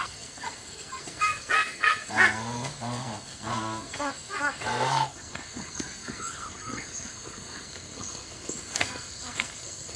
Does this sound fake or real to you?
fake